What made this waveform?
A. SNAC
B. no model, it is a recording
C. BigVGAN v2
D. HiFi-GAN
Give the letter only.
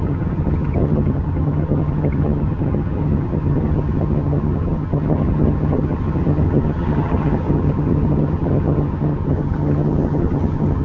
D